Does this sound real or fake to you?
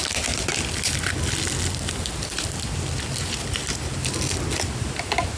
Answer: real